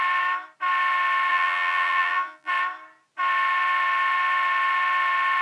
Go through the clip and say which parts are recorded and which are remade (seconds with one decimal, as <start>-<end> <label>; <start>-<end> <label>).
0.0-1.3 recorded; 1.3-2.5 remade; 2.5-5.4 recorded